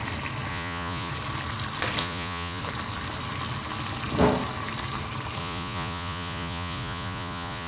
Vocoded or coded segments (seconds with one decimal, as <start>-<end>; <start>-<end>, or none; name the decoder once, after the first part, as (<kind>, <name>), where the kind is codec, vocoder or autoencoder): 0.5-1.1 (vocoder, Vocos); 2.0-2.6; 5.4-7.7